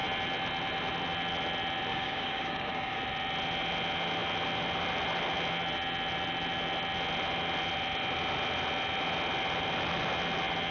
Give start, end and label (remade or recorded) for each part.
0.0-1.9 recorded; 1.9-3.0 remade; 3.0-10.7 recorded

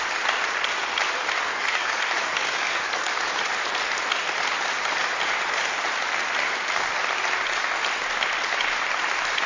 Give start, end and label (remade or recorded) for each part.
0.0-1.5 recorded; 1.5-3.3 remade; 3.3-9.5 recorded

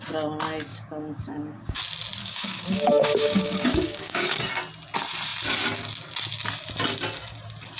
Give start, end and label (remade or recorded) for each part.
0.0-0.7 recorded; 0.7-1.8 remade; 1.8-2.2 recorded; 2.2-4.4 remade; 4.4-7.8 recorded

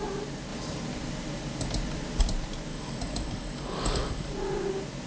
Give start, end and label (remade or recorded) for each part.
0.0-2.7 recorded; 2.7-4.3 remade; 4.3-5.1 recorded

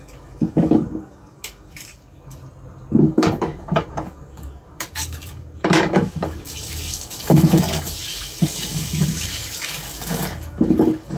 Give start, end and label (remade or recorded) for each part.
0.0-2.4 remade; 2.4-3.0 recorded; 3.0-11.2 remade